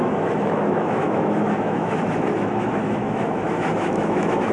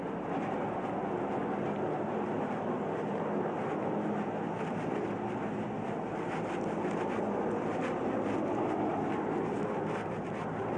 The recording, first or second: second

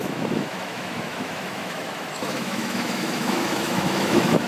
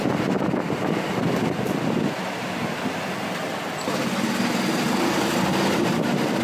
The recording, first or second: second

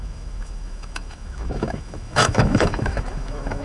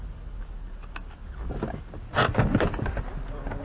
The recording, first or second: second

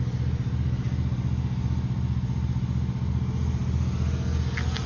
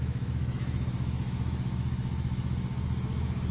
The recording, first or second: first